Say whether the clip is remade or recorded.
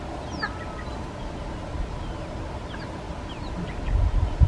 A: recorded